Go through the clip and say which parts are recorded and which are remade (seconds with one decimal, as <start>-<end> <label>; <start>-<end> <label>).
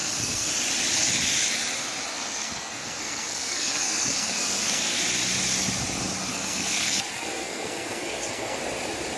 0.0-0.5 remade; 0.5-2.1 recorded; 2.1-5.0 remade; 5.0-6.3 recorded; 6.3-8.6 remade; 8.6-9.2 recorded